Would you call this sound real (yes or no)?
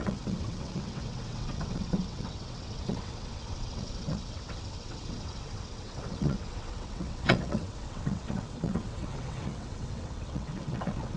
no